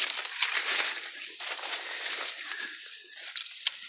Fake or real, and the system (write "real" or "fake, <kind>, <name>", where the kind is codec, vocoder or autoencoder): real